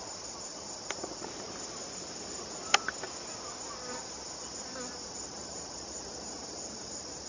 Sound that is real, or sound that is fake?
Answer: real